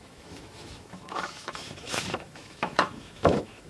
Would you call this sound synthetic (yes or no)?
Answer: yes